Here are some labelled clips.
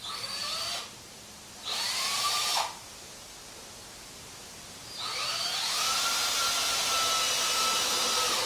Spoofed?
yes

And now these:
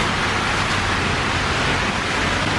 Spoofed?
no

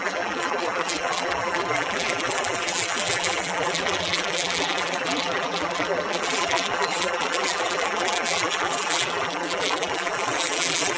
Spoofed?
yes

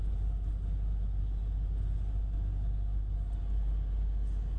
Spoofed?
no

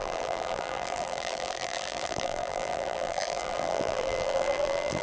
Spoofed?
yes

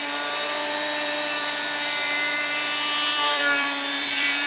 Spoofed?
yes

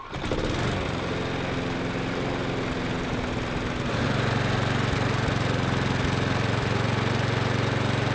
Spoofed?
no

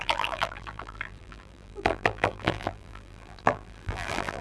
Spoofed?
yes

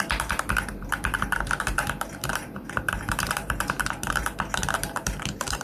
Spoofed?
yes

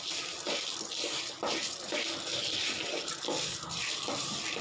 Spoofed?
no